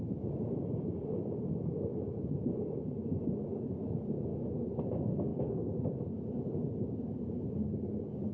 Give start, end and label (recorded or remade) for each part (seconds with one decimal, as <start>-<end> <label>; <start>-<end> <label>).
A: 0.0-5.3 recorded; 5.3-6.0 remade; 6.0-8.3 recorded